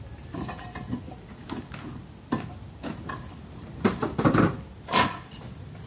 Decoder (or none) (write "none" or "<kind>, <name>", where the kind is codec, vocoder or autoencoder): none